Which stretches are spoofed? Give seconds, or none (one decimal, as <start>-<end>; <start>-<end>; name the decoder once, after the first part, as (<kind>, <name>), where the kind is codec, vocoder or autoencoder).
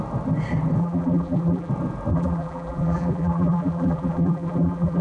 0.8-1.7 (vocoder, BigVGAN v2); 2.1-5.0